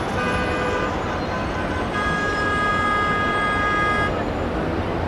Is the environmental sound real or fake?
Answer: real